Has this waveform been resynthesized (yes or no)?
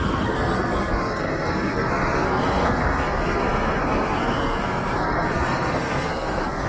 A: yes